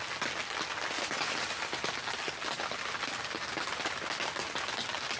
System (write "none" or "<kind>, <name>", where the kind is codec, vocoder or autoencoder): none